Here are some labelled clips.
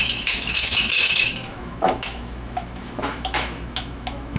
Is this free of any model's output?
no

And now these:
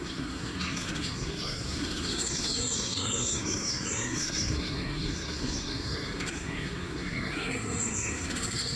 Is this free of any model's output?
no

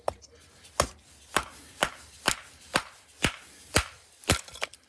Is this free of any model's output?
yes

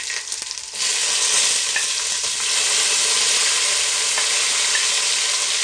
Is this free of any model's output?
yes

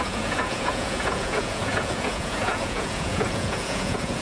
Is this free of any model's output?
no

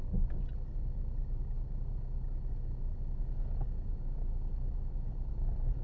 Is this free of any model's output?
yes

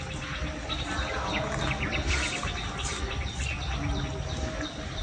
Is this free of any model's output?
yes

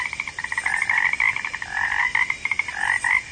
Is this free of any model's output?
yes